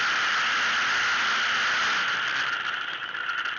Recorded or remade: recorded